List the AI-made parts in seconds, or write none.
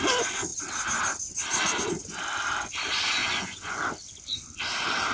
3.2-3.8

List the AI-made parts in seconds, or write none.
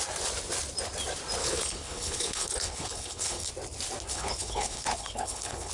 1.4-3.5; 4.1-5.7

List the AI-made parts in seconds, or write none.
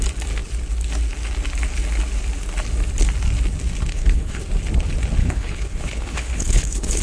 3.9-4.4; 5.2-7.0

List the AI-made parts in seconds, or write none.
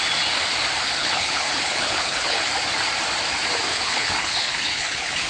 1.0-2.5; 3.7-5.3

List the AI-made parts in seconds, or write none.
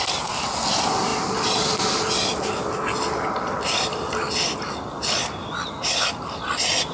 none